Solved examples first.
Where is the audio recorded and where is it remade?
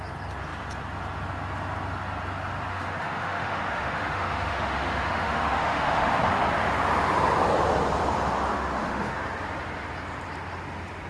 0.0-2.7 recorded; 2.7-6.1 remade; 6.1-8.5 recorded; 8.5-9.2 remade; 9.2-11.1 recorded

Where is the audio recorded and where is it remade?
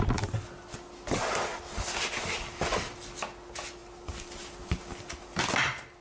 0.0-6.0 recorded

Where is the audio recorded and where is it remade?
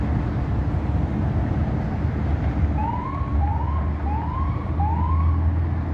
0.0-5.9 recorded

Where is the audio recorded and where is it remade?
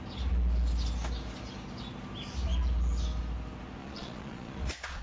0.0-3.8 recorded; 3.8-5.0 remade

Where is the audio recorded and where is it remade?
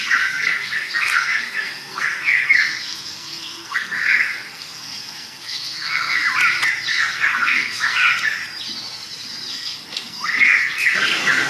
0.0-6.2 remade; 6.2-6.9 recorded; 6.9-8.4 remade; 8.4-9.5 recorded; 9.5-11.5 remade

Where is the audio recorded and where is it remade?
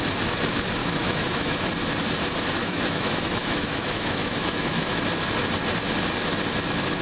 0.0-0.8 recorded; 0.8-1.7 remade; 1.7-2.6 recorded; 2.6-5.0 remade; 5.0-7.0 recorded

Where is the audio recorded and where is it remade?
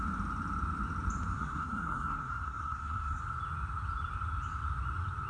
0.0-1.3 recorded; 1.3-3.2 remade; 3.2-5.3 recorded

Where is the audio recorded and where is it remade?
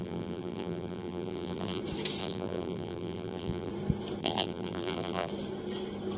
0.0-1.8 remade; 1.8-2.2 recorded; 2.2-3.7 remade; 3.7-4.2 recorded; 4.2-5.3 remade; 5.3-6.2 recorded